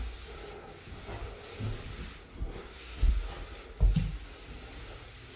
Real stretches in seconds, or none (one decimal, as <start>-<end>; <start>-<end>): 0.0-2.3; 3.1-5.4